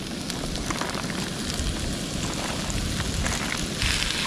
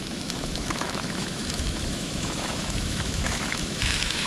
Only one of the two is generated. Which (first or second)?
second